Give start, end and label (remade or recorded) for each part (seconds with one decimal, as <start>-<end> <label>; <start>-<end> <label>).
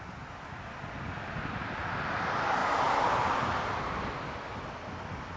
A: 0.0-5.4 recorded